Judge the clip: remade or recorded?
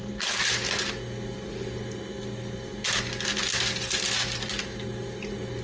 recorded